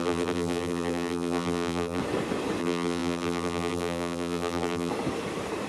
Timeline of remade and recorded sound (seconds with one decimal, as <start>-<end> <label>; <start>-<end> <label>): 0.0-2.0 remade; 2.0-2.6 recorded; 2.6-4.9 remade; 4.9-5.7 recorded